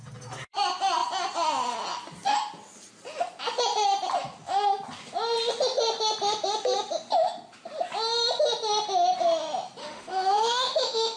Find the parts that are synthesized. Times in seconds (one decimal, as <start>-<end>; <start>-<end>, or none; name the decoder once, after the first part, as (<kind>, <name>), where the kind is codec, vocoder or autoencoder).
9.8-11.2 (autoencoder, DAC-VAE)